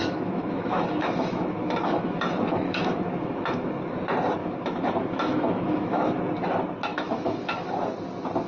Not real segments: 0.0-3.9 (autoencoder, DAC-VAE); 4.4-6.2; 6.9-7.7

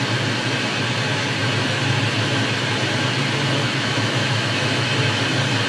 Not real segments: 3.6-4.9 (autoencoder, DAC-VAE)

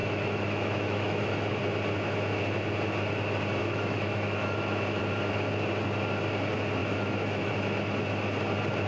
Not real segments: 0.0-1.6 (autoencoder, DAC-VAE); 3.6-5.0; 6.8-7.5

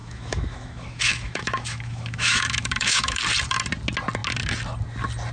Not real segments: 0.0-3.2 (autoencoder, DAC-VAE)